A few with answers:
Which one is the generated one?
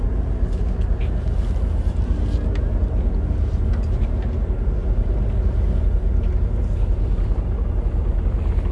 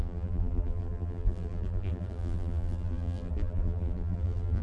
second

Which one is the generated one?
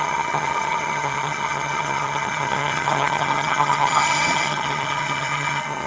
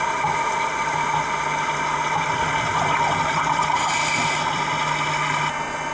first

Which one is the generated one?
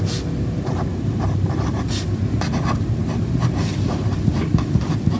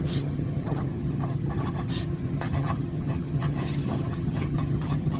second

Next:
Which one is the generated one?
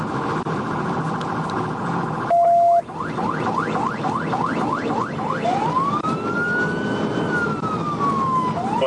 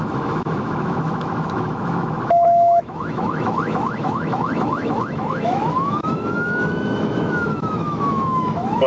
second